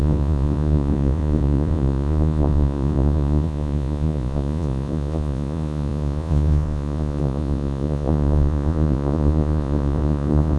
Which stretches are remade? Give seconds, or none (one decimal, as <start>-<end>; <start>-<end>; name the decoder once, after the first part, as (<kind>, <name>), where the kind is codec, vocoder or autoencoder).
0.0-10.6 (vocoder, Vocos)